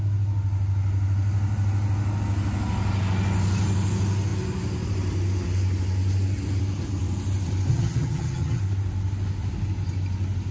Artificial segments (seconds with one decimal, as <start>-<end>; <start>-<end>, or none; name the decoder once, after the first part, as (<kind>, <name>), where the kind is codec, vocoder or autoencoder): 7.7-8.6 (vocoder, HiFi-GAN)